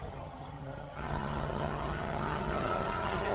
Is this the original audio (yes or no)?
no